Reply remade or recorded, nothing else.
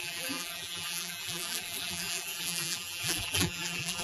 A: remade